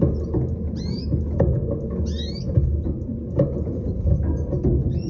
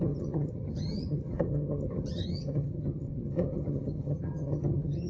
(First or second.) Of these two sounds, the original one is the first